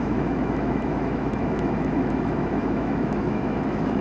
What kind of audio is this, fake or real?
fake